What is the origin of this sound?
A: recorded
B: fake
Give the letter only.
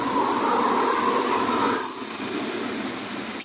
A